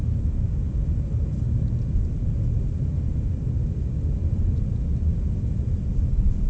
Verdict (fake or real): real